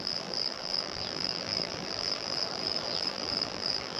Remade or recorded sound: remade